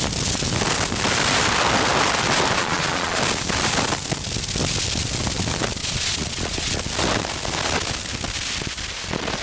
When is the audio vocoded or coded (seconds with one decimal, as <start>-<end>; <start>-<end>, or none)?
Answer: 2.6-3.2; 5.8-6.8